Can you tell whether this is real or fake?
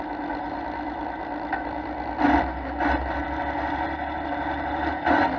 real